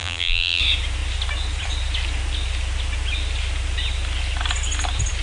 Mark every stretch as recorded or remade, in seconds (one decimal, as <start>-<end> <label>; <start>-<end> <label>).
0.0-0.6 remade; 0.6-5.2 recorded